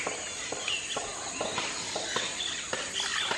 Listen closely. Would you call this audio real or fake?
real